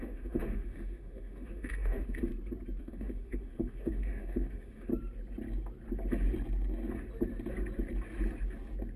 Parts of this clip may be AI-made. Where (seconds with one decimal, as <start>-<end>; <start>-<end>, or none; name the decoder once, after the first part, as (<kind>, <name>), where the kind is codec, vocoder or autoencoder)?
0.0-2.3 (autoencoder, DAC-VAE); 2.8-4.9